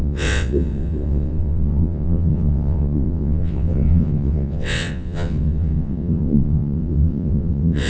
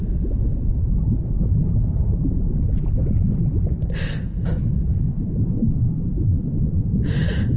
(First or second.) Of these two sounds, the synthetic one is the first